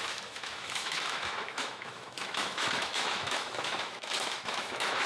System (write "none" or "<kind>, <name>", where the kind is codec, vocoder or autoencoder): autoencoder, DAC-VAE